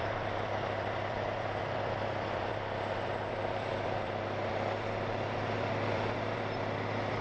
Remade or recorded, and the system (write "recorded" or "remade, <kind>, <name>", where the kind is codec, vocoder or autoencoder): remade, vocoder, BigVGAN v2